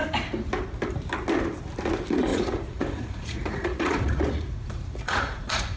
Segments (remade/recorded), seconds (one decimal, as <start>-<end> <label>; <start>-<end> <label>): 0.0-2.3 recorded; 2.3-5.8 remade